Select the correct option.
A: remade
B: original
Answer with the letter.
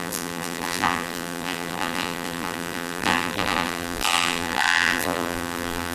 A